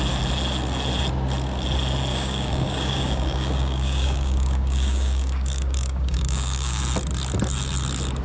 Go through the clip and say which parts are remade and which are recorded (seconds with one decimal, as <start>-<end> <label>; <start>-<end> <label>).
0.0-2.1 recorded; 2.1-6.8 remade; 6.8-8.2 recorded